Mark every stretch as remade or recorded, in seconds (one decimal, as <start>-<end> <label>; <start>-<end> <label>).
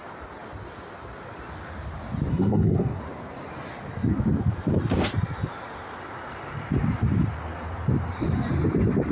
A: 0.0-2.3 recorded; 2.3-3.0 remade; 3.0-9.1 recorded